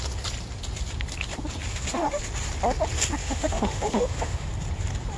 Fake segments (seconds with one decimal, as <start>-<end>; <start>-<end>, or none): 1.7-2.2; 3.2-4.5